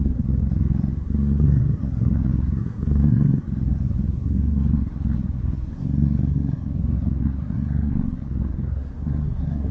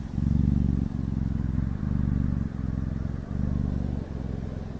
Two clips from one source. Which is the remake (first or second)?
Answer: first